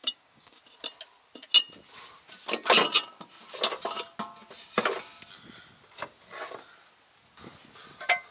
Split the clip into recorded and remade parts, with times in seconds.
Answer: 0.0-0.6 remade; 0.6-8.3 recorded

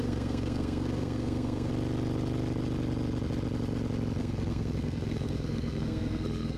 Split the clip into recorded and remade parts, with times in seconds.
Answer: 0.0-1.7 remade; 1.7-4.2 recorded; 4.2-6.6 remade

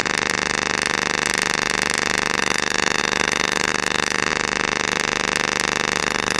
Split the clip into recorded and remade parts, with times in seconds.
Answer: 0.0-2.4 recorded; 2.4-4.3 remade; 4.3-6.0 recorded; 6.0-6.4 remade

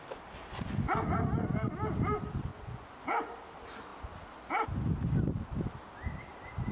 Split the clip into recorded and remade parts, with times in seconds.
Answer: 0.0-2.5 recorded; 2.5-3.0 remade; 3.0-6.7 recorded

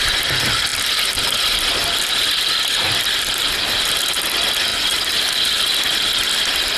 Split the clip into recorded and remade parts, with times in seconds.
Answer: 0.0-4.7 recorded; 4.7-5.6 remade; 5.6-6.8 recorded

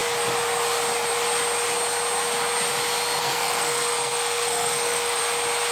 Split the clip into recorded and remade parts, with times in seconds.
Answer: 0.0-3.2 recorded; 3.2-5.2 remade; 5.2-5.7 recorded

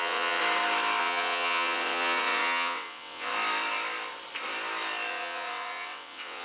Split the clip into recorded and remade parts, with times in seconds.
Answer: 0.0-0.4 remade; 0.4-1.0 recorded; 1.0-3.3 remade; 3.3-5.1 recorded; 5.1-6.4 remade

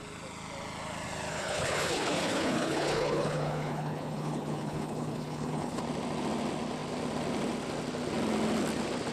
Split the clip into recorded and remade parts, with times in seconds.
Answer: 0.0-1.3 recorded; 1.3-5.8 remade; 5.8-9.1 recorded